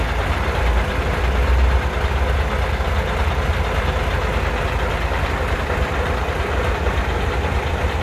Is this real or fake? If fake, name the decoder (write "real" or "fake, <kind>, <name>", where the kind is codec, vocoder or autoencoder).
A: real